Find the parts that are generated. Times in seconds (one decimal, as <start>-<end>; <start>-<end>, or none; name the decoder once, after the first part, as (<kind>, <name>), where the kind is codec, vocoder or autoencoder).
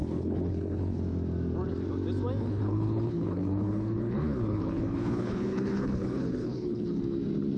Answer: 0.0-1.0 (codec, HILCodec); 2.4-7.0